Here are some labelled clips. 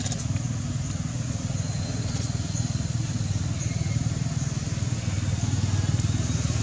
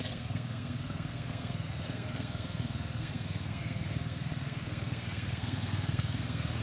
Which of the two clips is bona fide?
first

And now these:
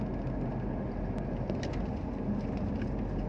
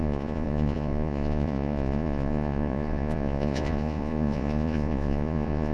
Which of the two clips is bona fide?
first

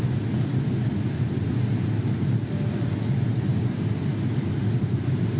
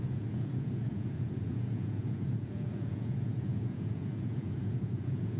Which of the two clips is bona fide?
first